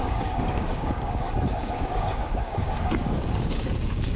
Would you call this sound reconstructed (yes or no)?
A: yes